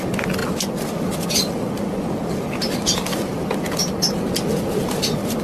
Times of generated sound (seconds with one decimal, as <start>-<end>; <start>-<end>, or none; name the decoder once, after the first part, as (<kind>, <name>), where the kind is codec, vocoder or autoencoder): none